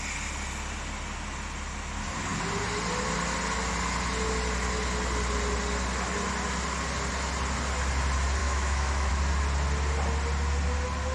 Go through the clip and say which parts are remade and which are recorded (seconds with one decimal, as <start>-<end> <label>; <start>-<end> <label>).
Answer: 0.0-8.4 recorded; 8.4-9.1 remade; 9.1-11.1 recorded